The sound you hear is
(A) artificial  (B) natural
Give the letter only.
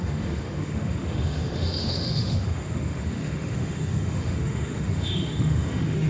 A